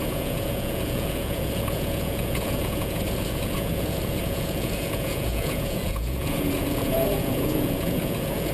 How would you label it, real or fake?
fake